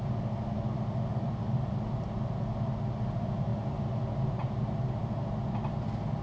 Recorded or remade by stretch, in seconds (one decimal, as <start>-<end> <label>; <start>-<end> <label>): 0.0-6.2 recorded